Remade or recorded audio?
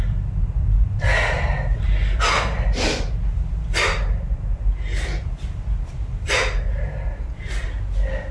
recorded